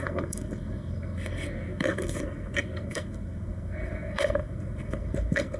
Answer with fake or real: fake